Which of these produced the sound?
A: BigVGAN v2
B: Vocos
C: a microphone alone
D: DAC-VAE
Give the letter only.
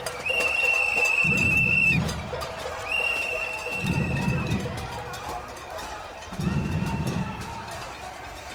A